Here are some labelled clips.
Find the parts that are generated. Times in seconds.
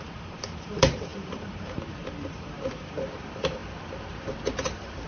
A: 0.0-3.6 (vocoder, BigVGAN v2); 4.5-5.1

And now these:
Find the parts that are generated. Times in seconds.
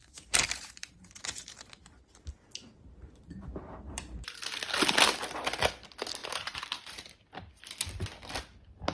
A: 0.0-4.4 (vocoder, BigVGAN v2); 6.2-7.6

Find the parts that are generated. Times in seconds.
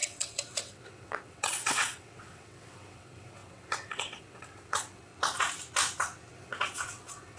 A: 0.0-5.1 (vocoder, WaveNeXt); 6.3-7.4